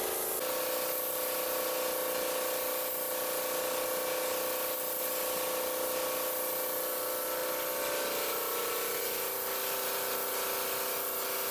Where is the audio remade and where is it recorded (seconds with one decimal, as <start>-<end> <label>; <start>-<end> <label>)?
0.0-11.5 recorded